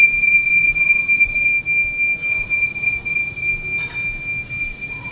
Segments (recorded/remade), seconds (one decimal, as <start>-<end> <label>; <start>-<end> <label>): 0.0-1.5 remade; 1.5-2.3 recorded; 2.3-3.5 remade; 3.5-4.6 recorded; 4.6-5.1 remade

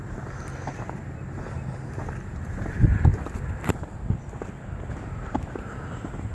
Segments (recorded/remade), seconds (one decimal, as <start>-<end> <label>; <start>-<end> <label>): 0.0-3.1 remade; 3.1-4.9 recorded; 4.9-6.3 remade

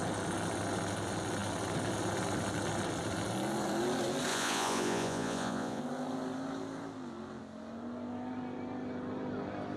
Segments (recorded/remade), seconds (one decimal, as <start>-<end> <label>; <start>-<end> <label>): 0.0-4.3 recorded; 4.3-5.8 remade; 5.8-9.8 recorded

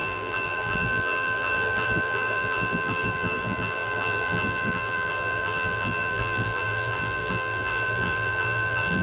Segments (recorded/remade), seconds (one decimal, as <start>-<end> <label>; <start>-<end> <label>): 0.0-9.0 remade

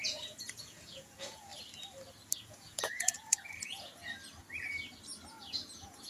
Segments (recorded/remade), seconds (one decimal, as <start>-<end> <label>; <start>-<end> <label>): 0.0-1.5 remade; 1.5-2.4 recorded; 2.4-3.9 remade; 3.9-5.3 recorded; 5.3-6.1 remade

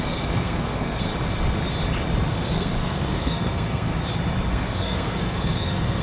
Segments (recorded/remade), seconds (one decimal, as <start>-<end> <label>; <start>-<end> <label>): 0.0-1.1 remade; 1.1-2.3 recorded; 2.3-3.9 remade; 3.9-4.5 recorded; 4.5-6.0 remade